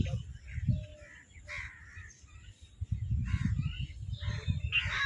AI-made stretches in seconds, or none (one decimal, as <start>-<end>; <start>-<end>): none